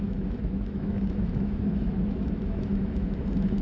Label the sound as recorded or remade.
remade